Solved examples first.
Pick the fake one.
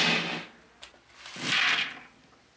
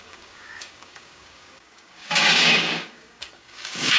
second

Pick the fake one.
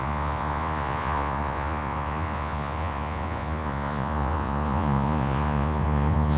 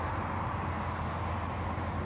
first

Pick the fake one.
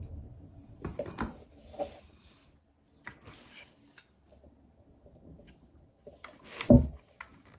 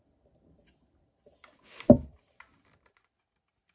second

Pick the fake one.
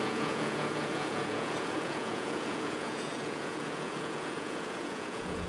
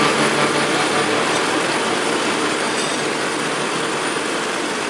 first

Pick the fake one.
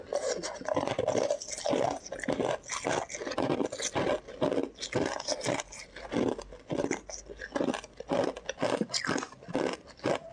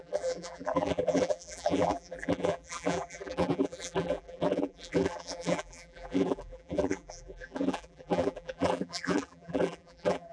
second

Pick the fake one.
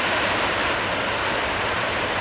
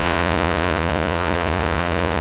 second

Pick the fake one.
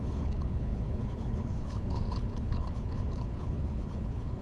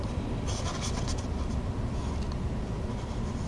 first